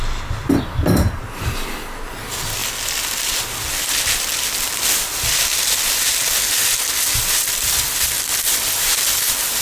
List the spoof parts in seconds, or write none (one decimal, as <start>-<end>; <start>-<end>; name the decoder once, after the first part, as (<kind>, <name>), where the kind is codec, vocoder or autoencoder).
none